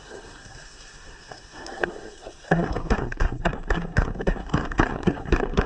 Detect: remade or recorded remade